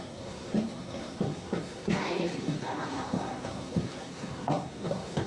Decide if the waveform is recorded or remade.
remade